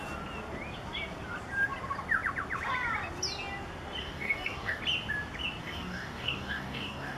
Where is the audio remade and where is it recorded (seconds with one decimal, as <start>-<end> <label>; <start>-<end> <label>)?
0.0-4.0 recorded; 4.0-4.8 remade; 4.8-5.6 recorded; 5.6-7.2 remade